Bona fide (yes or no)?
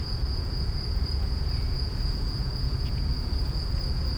no